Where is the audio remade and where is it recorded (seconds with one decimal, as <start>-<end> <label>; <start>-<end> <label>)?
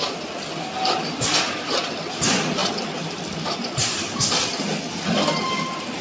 0.0-6.0 recorded